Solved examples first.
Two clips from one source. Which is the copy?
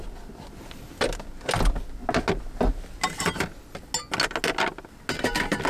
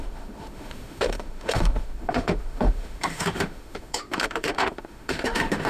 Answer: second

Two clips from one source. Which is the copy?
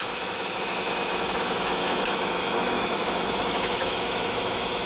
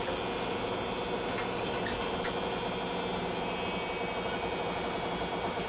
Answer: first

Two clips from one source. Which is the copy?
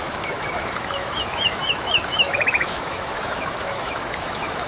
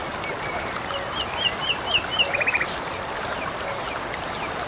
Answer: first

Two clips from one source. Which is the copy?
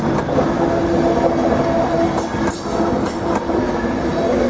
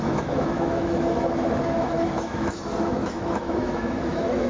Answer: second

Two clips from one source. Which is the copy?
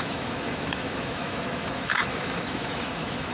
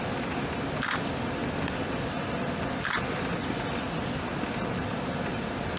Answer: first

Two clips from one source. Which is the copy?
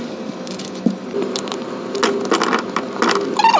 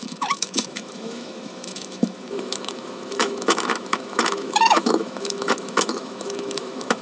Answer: second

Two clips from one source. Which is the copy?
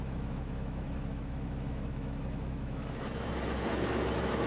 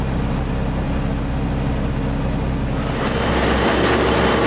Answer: first